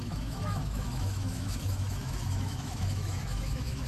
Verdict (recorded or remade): remade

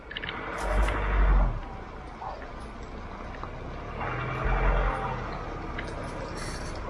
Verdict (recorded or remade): recorded